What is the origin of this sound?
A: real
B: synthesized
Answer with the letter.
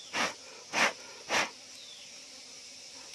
A